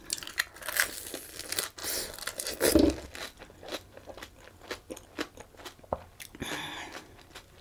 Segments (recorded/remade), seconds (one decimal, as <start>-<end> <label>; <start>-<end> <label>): 0.0-7.6 recorded